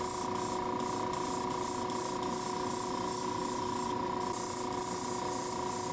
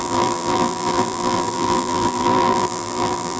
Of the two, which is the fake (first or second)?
second